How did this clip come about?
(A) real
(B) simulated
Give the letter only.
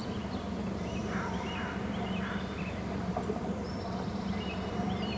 B